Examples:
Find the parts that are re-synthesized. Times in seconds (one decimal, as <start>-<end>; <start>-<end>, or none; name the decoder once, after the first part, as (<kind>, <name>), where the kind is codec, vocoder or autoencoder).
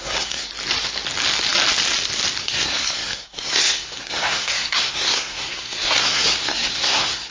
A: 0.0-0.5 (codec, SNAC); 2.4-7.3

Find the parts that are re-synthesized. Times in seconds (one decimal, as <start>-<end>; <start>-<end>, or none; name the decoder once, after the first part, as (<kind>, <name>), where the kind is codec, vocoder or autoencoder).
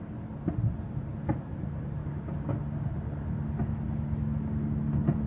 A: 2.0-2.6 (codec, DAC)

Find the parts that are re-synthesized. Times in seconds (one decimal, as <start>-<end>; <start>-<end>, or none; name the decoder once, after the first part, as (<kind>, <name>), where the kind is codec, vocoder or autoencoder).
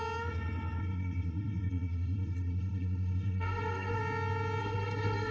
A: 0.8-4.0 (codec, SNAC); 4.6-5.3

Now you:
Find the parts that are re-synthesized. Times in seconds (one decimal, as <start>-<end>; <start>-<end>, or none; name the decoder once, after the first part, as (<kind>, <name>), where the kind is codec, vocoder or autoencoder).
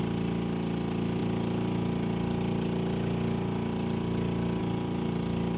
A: none